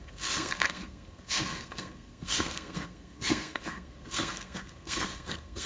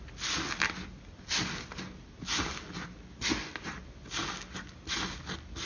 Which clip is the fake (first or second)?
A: first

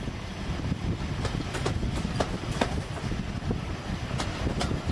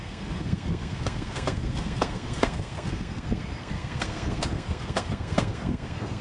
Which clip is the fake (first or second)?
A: second